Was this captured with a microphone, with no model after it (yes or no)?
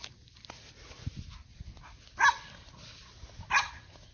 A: yes